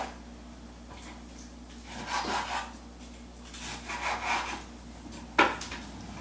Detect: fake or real real